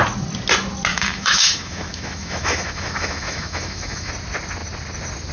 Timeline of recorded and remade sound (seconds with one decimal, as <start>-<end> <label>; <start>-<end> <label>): 0.0-0.9 recorded; 0.9-4.1 remade; 4.1-5.3 recorded